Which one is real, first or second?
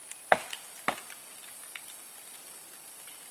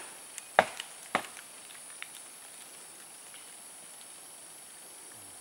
second